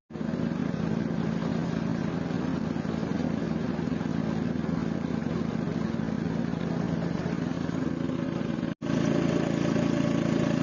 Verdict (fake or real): real